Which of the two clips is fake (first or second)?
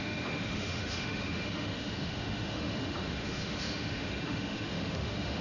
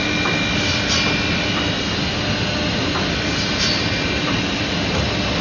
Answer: first